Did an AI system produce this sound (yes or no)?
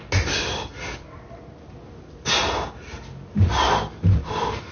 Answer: no